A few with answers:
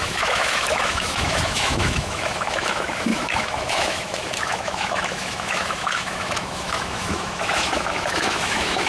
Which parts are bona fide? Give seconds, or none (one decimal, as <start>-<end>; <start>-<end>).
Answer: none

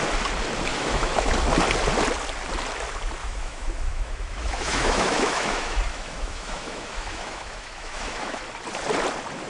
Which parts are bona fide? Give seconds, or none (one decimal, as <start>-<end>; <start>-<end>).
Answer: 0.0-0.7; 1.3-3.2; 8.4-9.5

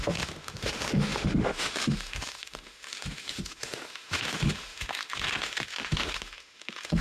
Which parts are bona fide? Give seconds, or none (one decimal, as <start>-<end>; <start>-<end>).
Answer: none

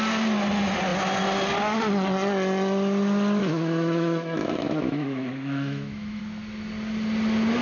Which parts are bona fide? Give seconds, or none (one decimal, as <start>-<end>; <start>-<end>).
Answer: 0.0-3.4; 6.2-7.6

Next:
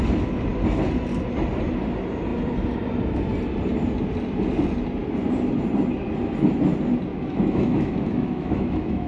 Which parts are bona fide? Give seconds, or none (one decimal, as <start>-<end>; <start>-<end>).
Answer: 0.0-7.1

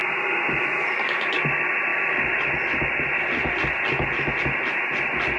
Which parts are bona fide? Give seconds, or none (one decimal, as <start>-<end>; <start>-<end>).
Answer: 0.0-5.4